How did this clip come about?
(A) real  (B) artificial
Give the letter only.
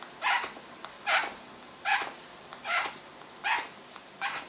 A